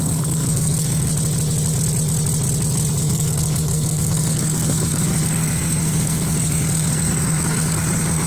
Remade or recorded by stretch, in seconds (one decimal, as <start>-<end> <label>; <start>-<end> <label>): 0.0-1.1 remade; 1.1-3.0 recorded; 3.0-8.3 remade